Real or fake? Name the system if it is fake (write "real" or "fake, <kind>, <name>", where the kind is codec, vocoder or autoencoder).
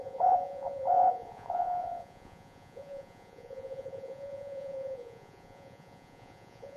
fake, vocoder, Vocos